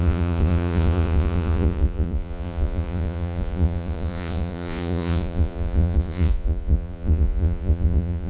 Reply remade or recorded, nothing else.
remade